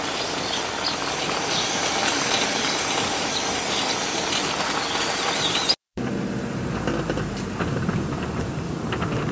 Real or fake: real